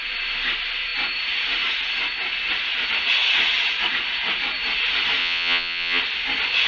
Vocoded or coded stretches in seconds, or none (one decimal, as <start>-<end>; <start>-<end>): 5.2-6.0